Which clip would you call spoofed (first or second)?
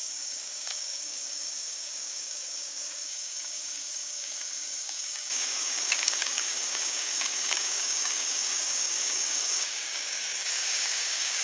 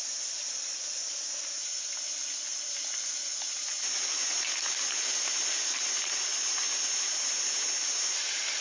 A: first